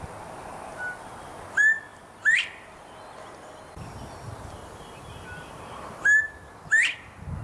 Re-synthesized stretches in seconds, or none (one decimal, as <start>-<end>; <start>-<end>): none